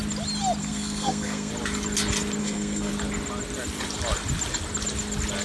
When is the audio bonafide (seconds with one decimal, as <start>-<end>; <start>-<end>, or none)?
0.0-0.6; 1.5-2.4; 2.9-5.4